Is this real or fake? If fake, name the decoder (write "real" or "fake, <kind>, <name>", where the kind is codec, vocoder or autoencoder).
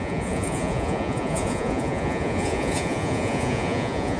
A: fake, vocoder, Vocos